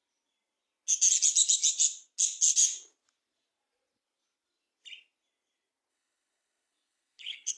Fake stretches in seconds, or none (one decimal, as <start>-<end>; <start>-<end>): 5.9-7.6